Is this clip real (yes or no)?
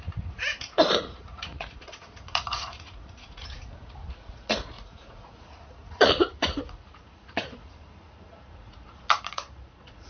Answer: no